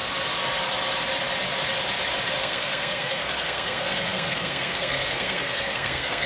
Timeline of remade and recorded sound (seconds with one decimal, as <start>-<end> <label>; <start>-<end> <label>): 0.0-2.4 recorded; 2.4-6.3 remade